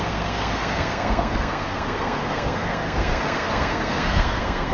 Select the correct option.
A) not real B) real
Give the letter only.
A